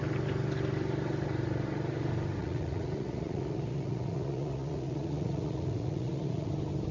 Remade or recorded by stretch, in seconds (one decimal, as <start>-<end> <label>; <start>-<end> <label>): 0.0-2.4 recorded; 2.4-6.5 remade; 6.5-6.9 recorded